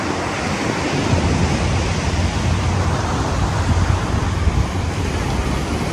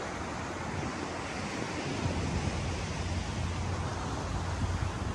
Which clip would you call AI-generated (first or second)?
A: first